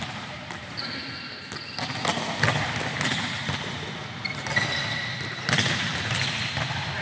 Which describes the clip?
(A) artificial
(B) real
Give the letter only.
B